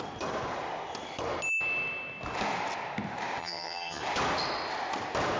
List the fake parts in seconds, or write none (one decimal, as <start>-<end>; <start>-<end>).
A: 3.4-4.0